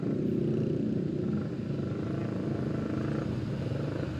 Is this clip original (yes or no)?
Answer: yes